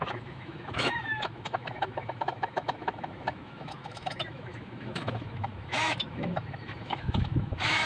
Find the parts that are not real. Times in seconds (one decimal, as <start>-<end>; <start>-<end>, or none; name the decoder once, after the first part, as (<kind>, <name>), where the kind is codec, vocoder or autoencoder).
0.0-7.9 (autoencoder, DAC-VAE)